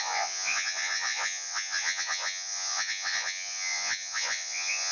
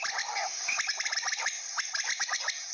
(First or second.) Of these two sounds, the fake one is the first